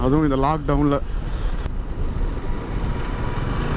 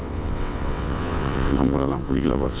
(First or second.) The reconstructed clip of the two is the second